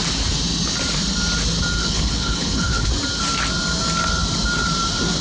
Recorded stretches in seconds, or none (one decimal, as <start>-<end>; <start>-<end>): 0.0-1.8; 2.9-5.2